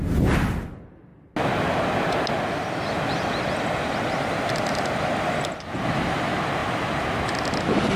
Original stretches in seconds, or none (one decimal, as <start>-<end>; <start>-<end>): 0.0-8.0